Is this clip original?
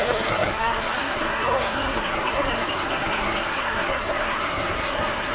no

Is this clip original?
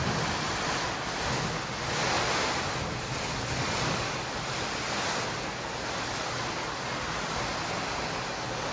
yes